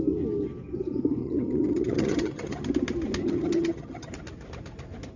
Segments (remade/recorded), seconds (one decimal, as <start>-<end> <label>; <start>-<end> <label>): 0.0-1.2 recorded; 1.2-2.7 remade; 2.7-3.2 recorded; 3.2-4.1 remade; 4.1-5.2 recorded